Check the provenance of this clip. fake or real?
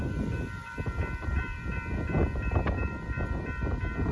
fake